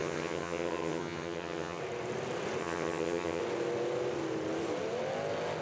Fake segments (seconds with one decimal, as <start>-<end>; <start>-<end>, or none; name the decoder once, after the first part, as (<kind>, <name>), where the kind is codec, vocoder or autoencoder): 0.0-1.8 (vocoder, HiFi-GAN); 2.6-3.4